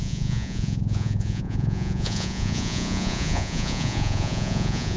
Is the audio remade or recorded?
remade